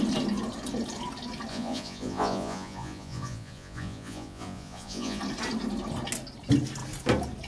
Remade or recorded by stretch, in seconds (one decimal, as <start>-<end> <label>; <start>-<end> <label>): 0.0-1.5 recorded; 1.5-5.2 remade; 5.2-7.5 recorded